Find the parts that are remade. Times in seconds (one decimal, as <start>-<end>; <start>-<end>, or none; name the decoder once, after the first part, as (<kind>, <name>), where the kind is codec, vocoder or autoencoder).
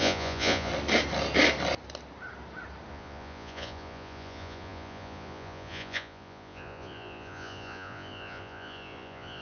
0.0-0.7 (vocoder, Vocos); 2.9-9.4